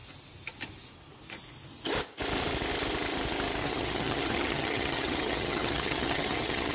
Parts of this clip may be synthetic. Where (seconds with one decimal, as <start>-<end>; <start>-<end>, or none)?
3.6-6.7